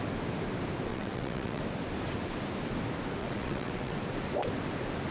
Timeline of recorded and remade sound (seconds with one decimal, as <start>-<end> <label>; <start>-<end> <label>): 0.0-0.9 recorded; 0.9-1.6 remade; 1.6-3.2 recorded; 3.2-4.0 remade; 4.0-5.1 recorded